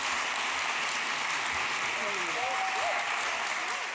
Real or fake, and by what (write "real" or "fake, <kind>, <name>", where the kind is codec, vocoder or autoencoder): real